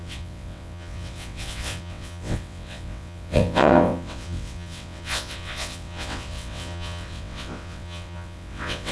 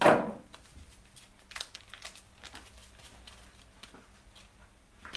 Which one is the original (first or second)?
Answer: second